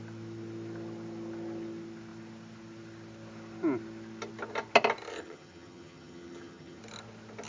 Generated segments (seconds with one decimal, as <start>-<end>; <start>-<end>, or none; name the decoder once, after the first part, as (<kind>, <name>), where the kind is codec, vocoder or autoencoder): 5.1-6.8 (vocoder, HiFi-GAN)